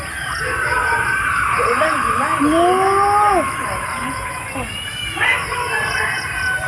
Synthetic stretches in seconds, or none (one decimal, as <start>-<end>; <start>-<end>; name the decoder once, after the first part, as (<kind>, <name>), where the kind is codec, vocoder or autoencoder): none